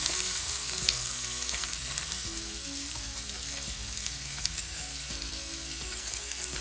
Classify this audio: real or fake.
fake